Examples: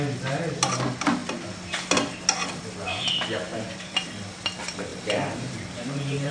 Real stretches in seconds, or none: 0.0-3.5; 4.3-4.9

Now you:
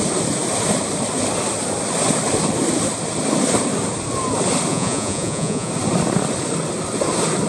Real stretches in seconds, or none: 0.0-4.7; 5.7-7.5

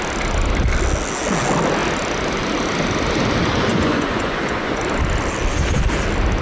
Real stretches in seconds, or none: 0.0-3.7; 4.8-6.4

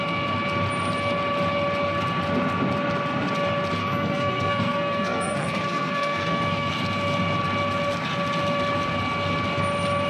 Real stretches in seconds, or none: 0.0-3.8; 6.7-10.1

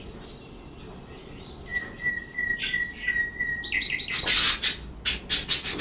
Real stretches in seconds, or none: 0.0-5.8

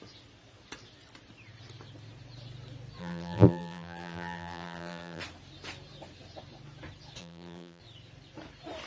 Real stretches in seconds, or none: 0.0-3.0; 5.2-7.2; 7.8-8.9